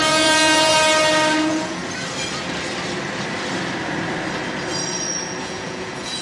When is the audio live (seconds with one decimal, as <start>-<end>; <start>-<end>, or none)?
0.7-1.4; 1.8-5.4